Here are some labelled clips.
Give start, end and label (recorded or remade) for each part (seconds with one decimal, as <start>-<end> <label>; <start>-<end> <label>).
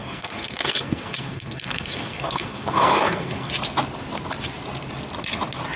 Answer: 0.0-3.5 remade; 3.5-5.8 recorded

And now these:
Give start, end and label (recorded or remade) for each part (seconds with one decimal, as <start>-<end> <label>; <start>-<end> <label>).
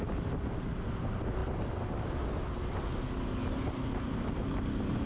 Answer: 0.0-5.1 recorded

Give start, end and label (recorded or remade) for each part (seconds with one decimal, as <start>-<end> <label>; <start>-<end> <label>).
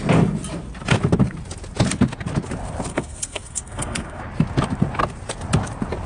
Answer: 0.0-2.9 recorded; 2.9-4.2 remade; 4.2-6.1 recorded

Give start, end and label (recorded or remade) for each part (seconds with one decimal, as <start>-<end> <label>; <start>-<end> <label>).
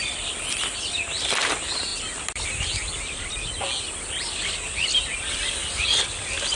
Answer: 0.0-6.6 recorded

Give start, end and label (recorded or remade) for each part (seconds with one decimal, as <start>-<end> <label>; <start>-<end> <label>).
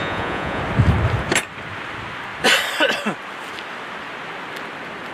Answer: 0.0-0.6 remade; 0.6-5.1 recorded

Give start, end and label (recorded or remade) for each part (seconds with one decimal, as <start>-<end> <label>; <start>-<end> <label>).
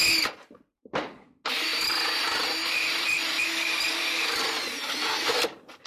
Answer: 0.0-1.7 recorded; 1.7-5.2 remade; 5.2-5.9 recorded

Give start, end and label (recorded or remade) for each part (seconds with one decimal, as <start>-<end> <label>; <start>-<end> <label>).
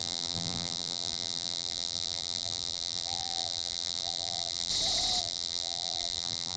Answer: 0.0-4.7 remade; 4.7-5.2 recorded; 5.2-6.6 remade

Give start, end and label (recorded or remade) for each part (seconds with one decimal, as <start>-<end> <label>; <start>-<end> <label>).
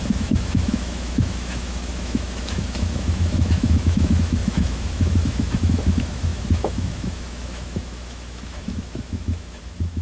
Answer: 0.0-10.0 remade